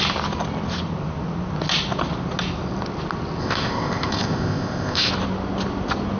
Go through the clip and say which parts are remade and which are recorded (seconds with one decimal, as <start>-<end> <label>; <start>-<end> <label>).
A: 0.0-3.4 recorded; 3.4-5.1 remade; 5.1-6.2 recorded